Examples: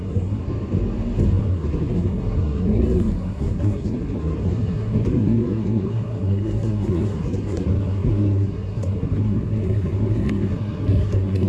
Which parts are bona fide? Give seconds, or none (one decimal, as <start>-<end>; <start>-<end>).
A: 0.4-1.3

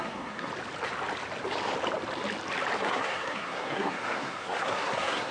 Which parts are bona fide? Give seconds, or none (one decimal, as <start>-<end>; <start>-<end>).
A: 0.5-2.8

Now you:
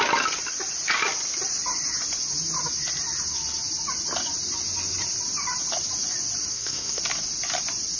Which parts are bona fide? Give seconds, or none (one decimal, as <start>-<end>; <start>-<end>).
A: 0.0-6.5; 7.0-8.0

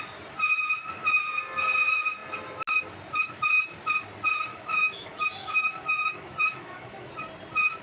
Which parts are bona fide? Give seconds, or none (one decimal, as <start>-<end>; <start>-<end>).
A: 0.0-4.5; 7.1-7.8